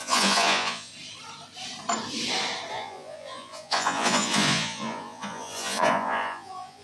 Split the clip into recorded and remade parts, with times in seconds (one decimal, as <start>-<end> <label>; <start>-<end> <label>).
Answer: 0.0-0.9 remade; 0.9-2.7 recorded; 2.7-6.8 remade